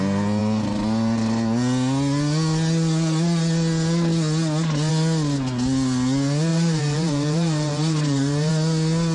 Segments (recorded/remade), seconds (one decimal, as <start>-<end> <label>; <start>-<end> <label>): 0.0-6.5 recorded; 6.5-8.5 remade; 8.5-9.1 recorded